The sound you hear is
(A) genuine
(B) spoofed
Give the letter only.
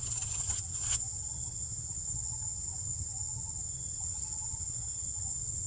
B